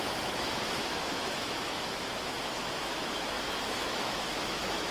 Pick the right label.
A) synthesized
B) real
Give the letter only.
A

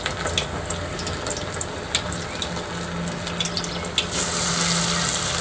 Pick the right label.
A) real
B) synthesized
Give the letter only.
A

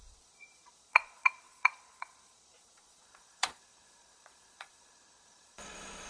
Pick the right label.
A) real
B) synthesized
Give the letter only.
B